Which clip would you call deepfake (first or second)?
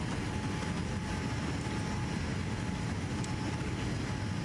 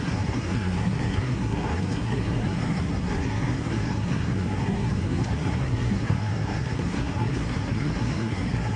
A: second